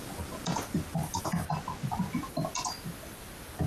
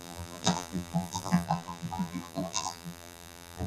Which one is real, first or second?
first